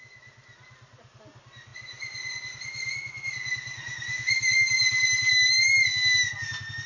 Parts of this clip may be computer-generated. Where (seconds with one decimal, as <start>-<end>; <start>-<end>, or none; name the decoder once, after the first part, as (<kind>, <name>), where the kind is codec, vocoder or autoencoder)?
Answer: none